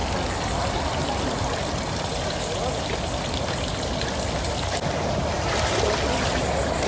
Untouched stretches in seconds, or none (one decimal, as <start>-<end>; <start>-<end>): 0.0-6.9